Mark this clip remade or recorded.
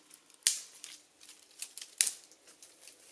recorded